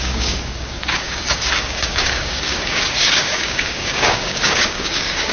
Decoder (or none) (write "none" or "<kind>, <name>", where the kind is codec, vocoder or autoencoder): codec, DAC